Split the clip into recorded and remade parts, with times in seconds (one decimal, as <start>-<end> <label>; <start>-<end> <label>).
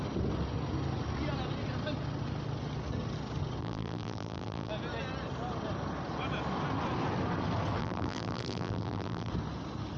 0.0-3.6 recorded; 3.6-4.7 remade; 4.7-7.8 recorded; 7.8-9.3 remade; 9.3-10.0 recorded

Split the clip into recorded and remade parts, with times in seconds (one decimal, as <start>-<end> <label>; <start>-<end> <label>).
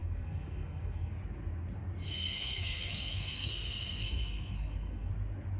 0.0-1.1 remade; 1.1-2.1 recorded; 2.1-5.1 remade; 5.1-5.6 recorded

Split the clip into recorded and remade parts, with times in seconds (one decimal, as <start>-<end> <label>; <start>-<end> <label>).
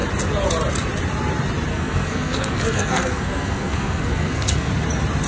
0.0-1.7 recorded; 1.7-4.7 remade; 4.7-5.3 recorded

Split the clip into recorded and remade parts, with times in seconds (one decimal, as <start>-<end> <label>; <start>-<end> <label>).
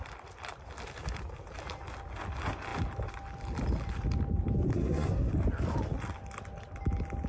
0.0-4.7 recorded; 4.7-5.3 remade; 5.3-7.3 recorded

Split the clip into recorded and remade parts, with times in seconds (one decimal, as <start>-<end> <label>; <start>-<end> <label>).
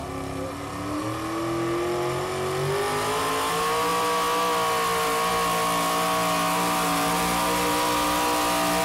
0.0-8.8 recorded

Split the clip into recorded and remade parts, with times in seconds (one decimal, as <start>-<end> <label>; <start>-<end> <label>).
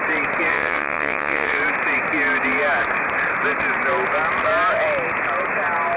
0.0-0.5 recorded; 0.5-1.6 remade; 1.6-6.0 recorded